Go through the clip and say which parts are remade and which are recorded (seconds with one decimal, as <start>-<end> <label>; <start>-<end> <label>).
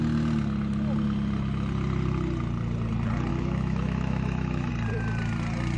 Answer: 0.0-3.3 recorded; 3.3-4.7 remade; 4.7-5.8 recorded